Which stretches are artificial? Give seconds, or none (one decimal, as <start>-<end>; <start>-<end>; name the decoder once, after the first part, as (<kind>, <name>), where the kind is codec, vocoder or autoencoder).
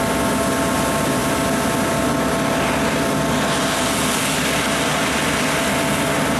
none